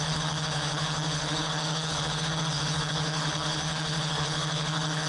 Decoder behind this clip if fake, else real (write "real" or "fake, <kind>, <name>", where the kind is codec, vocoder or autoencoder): fake, codec, HILCodec